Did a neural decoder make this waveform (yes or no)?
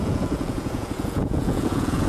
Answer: yes